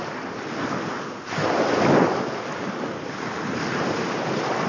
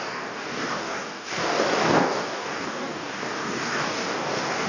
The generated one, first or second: second